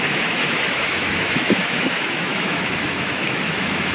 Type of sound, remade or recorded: remade